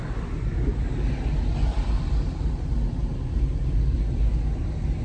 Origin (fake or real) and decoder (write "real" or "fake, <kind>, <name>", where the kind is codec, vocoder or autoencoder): real